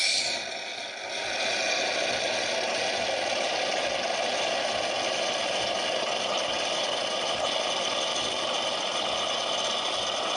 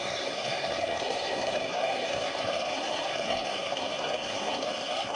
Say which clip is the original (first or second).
first